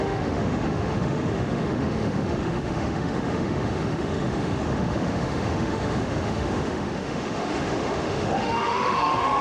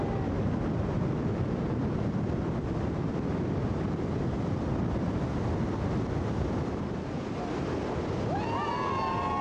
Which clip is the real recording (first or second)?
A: second